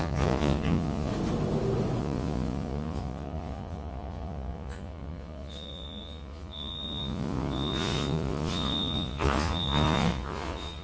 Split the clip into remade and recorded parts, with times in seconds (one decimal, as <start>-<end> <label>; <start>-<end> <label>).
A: 0.0-1.1 remade; 1.1-2.0 recorded; 2.0-10.8 remade